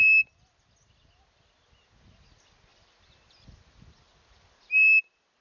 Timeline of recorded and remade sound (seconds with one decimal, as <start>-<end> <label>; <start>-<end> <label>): 0.0-5.4 recorded

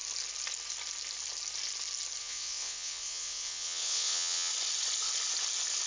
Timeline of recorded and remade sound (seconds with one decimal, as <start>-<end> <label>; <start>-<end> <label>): 0.0-2.2 recorded; 2.2-4.5 remade; 4.5-5.9 recorded